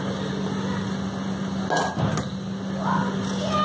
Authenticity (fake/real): real